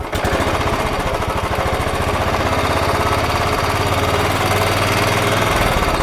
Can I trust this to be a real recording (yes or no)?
yes